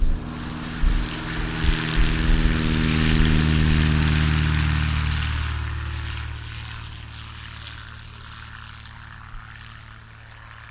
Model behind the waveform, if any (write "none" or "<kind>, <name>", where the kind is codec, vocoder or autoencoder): none